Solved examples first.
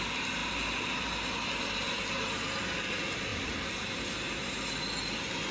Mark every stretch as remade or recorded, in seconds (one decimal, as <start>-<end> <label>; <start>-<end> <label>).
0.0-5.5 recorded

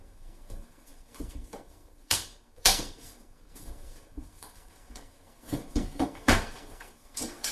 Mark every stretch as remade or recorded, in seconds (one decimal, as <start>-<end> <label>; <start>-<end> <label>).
0.0-7.5 remade

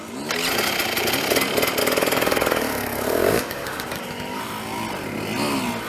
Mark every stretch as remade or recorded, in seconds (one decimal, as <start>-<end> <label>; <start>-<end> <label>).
0.0-1.8 recorded; 1.8-4.4 remade; 4.4-5.9 recorded

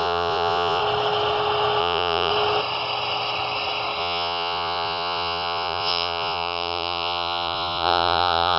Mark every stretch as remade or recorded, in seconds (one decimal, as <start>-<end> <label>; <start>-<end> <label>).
0.0-0.8 remade; 0.8-1.8 recorded; 1.8-2.3 remade; 2.3-4.0 recorded; 4.0-8.6 remade

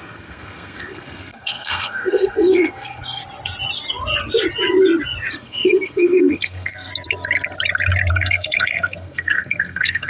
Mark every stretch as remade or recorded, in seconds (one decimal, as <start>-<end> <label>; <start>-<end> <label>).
0.0-3.2 remade; 3.2-5.3 recorded; 5.3-6.9 remade; 6.9-8.1 recorded; 8.1-10.1 remade

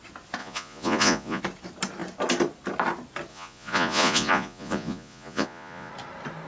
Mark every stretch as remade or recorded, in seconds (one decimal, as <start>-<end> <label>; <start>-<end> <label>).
0.0-0.4 recorded; 0.4-1.4 remade; 1.4-3.3 recorded; 3.3-5.9 remade; 5.9-6.5 recorded

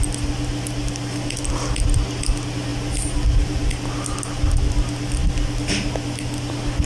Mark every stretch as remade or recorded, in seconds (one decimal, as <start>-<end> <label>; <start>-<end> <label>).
0.0-6.9 recorded